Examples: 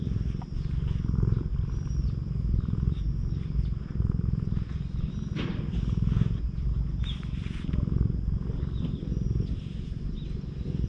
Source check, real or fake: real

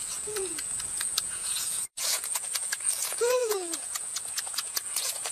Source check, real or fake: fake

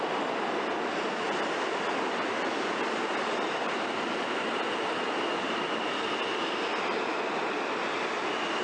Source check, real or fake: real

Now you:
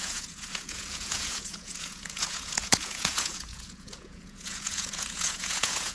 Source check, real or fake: fake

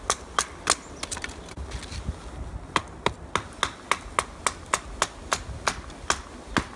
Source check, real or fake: real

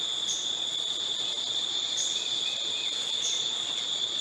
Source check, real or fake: fake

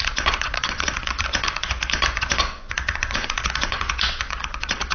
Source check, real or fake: fake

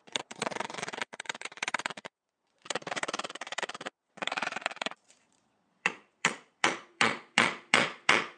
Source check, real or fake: fake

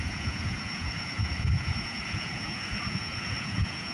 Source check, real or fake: fake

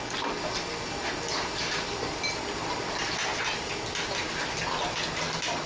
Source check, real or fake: real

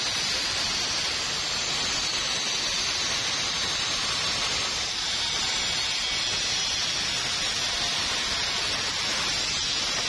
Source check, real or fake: real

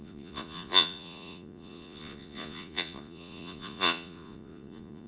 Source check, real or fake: fake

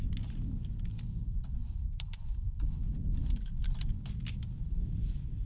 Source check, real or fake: real